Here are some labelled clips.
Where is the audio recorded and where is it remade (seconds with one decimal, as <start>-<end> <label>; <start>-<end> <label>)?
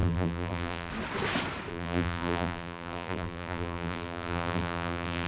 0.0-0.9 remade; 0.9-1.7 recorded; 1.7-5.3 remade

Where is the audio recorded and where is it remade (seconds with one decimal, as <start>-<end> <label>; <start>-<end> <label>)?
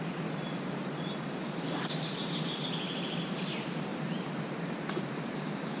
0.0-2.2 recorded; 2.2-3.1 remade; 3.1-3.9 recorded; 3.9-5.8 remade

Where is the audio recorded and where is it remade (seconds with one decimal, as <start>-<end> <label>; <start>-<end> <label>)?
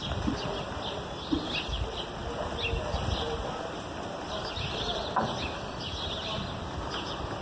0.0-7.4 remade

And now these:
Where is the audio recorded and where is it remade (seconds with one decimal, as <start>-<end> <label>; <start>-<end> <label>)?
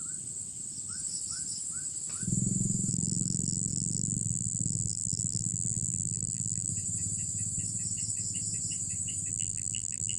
0.0-2.9 recorded; 2.9-6.7 remade; 6.7-9.3 recorded; 9.3-10.2 remade